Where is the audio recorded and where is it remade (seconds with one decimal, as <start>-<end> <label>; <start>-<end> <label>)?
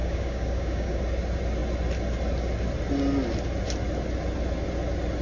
0.0-1.0 remade; 1.0-5.2 recorded